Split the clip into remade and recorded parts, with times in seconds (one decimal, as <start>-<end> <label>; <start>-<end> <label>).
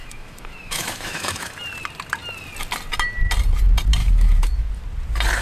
0.0-1.5 remade; 1.5-4.0 recorded; 4.0-4.7 remade; 4.7-5.4 recorded